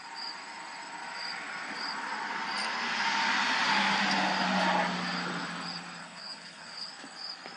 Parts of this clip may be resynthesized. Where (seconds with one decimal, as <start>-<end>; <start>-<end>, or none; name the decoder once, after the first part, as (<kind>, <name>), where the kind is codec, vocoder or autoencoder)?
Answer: 6.0-6.9 (codec, HILCodec)